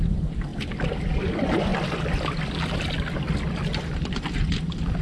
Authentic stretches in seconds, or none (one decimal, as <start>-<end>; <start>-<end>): 0.5-1.2; 1.7-5.0